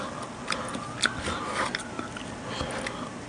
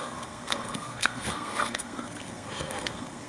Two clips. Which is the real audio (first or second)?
first